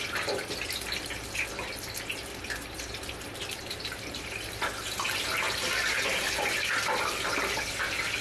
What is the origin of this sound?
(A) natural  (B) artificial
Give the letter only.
A